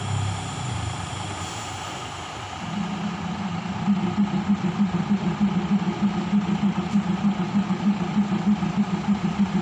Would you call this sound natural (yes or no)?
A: yes